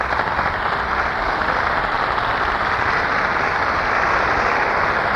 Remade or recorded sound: recorded